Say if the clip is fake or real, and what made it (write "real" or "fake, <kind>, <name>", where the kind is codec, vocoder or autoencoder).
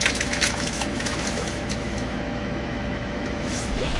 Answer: fake, autoencoder, DAC-VAE